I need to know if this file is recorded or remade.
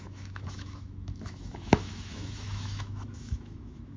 remade